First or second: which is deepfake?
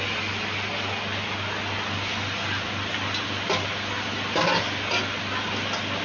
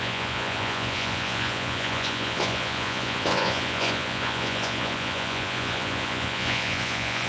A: second